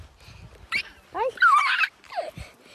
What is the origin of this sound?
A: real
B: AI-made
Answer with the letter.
A